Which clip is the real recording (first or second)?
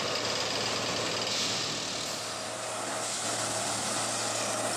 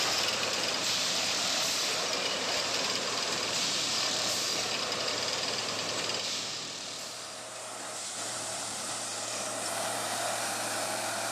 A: first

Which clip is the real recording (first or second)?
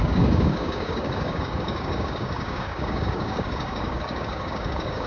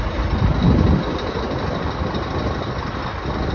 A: second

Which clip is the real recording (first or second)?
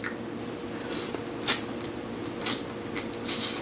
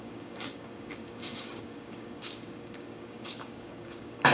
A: first